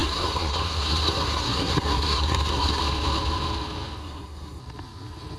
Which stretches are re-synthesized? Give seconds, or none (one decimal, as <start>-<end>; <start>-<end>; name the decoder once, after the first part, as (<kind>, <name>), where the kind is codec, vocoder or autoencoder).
0.0-2.8 (codec, SNAC); 4.0-4.6